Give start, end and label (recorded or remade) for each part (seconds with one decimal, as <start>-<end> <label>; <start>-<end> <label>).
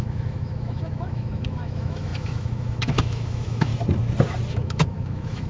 0.0-3.7 remade; 3.7-4.5 recorded; 4.5-5.5 remade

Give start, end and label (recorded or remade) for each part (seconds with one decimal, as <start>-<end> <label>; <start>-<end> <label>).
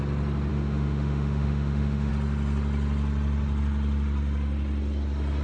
0.0-0.5 recorded; 0.5-2.1 remade; 2.1-5.4 recorded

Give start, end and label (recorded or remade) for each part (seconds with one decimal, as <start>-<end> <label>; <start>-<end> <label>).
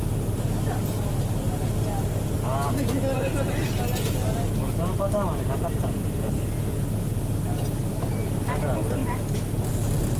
0.0-10.2 recorded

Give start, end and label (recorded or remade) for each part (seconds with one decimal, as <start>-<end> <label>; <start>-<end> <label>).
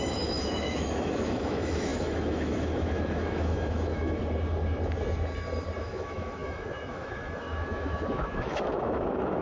0.0-4.2 remade; 4.2-5.8 recorded; 5.8-9.4 remade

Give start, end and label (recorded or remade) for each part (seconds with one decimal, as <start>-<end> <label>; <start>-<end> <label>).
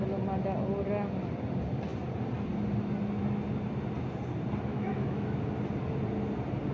0.0-4.7 recorded; 4.7-5.4 remade; 5.4-6.7 recorded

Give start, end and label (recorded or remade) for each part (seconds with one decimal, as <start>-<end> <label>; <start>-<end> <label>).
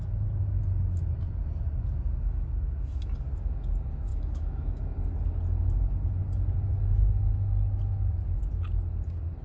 0.0-4.1 recorded; 4.1-4.8 remade; 4.8-9.4 recorded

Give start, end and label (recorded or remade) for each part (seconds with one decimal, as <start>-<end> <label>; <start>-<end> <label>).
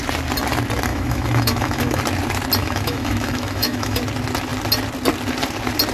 0.0-0.9 recorded; 0.9-2.0 remade; 2.0-2.6 recorded; 2.6-4.0 remade; 4.0-5.9 recorded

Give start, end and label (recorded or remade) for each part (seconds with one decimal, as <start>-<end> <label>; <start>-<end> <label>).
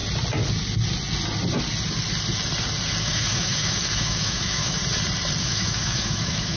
0.0-3.0 recorded; 3.0-4.8 remade; 4.8-5.4 recorded; 5.4-6.6 remade